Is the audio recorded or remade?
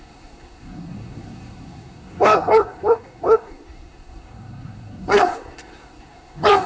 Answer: remade